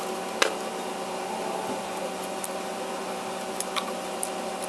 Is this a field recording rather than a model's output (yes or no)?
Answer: yes